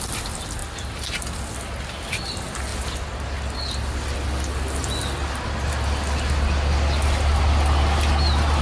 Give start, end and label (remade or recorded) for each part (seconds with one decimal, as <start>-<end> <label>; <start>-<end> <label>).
0.0-8.6 recorded